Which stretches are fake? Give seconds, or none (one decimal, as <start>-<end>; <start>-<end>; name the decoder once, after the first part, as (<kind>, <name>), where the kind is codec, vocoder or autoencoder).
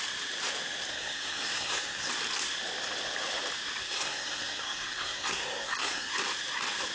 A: 0.9-2.1 (codec, SNAC); 3.8-6.1